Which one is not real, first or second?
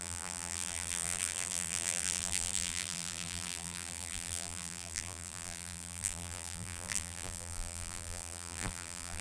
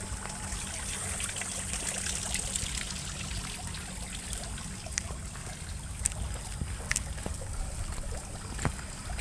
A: first